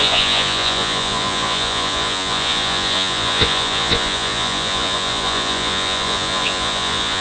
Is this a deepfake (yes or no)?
yes